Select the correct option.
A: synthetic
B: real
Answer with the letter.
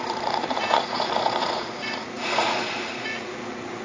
A